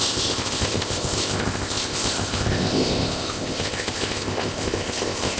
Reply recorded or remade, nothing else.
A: remade